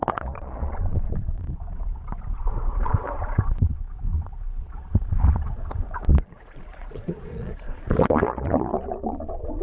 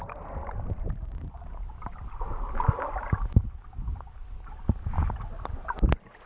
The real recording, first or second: second